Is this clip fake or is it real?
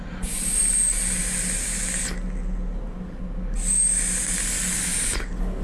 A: real